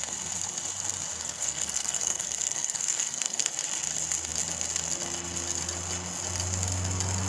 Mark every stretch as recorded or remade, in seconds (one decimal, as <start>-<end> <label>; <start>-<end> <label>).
0.0-1.2 recorded; 1.2-3.5 remade; 3.5-7.3 recorded